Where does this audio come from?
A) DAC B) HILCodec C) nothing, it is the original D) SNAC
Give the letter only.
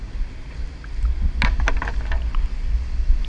C